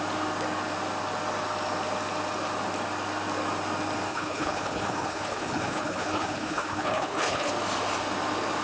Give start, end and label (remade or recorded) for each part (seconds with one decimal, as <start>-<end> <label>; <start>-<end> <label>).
0.0-4.1 recorded; 4.1-7.5 remade; 7.5-8.6 recorded